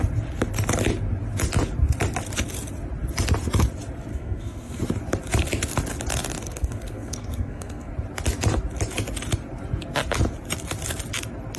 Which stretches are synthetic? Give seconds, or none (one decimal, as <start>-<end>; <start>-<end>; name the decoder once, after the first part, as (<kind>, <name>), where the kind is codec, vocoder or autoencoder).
4.1-4.8 (codec, SNAC); 6.4-7.9